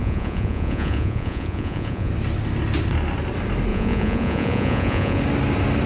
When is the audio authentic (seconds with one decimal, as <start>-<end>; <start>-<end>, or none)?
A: 2.1-3.7; 5.2-5.9